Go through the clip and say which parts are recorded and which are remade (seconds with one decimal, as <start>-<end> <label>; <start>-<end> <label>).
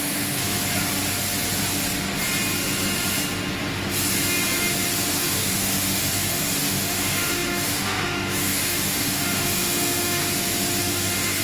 0.0-0.4 remade; 0.4-5.1 recorded; 5.1-10.2 remade; 10.2-10.8 recorded; 10.8-11.4 remade